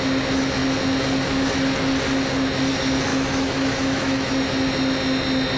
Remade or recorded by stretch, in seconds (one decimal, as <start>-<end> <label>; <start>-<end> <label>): 0.0-3.1 recorded; 3.1-4.3 remade; 4.3-5.6 recorded